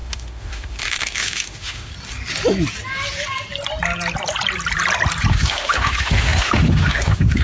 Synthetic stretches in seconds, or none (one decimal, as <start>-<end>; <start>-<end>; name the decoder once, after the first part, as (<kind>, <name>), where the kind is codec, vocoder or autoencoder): 0.0-1.9 (autoencoder, DAC-VAE); 5.3-7.4